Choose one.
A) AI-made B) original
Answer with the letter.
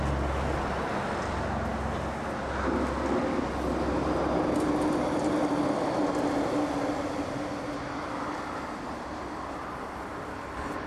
B